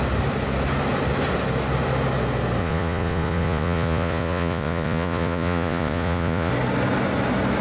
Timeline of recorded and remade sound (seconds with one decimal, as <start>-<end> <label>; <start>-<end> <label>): 0.0-2.6 recorded; 2.6-6.5 remade; 6.5-7.6 recorded